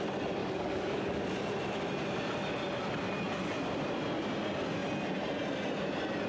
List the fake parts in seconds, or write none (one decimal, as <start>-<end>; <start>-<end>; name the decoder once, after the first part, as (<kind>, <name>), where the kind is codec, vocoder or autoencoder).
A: 0.4-1.2 (codec, DAC)